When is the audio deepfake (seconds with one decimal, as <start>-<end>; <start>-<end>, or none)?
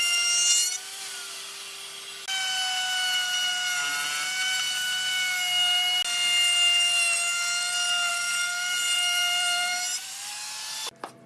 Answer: 8.1-10.3